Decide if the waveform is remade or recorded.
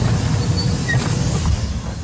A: recorded